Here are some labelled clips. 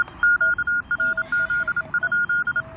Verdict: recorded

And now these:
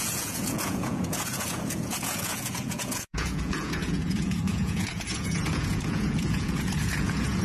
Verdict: remade